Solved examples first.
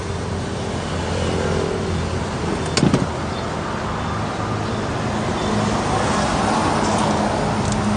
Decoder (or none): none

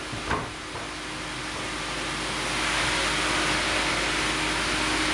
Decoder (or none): none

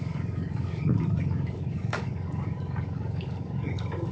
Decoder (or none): codec, DAC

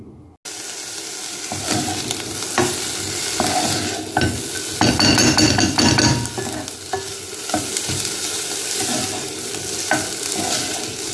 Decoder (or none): none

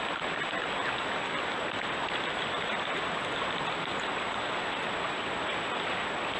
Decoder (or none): none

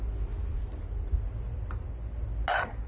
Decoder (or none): none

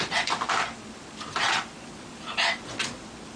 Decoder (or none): none